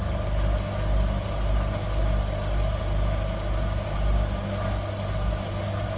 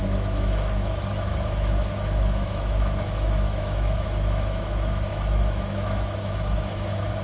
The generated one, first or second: second